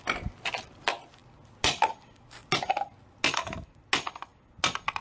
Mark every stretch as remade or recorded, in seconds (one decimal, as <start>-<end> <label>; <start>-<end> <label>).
0.0-5.0 recorded